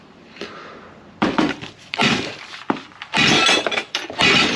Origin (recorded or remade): remade